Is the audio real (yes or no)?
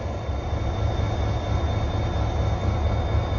yes